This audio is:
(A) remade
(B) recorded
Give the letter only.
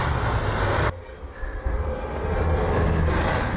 B